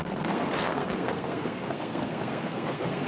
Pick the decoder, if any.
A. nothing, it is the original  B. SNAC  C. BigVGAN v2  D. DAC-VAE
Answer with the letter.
B